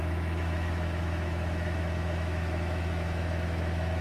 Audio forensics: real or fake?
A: fake